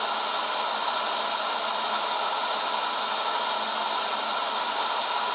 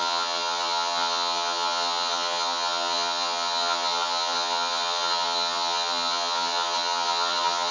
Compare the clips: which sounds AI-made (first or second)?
second